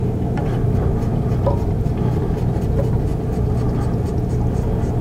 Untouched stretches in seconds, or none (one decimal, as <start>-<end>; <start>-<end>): 0.0-5.0